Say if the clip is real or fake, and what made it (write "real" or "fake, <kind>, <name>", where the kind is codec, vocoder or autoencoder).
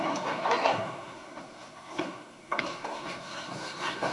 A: fake, codec, SNAC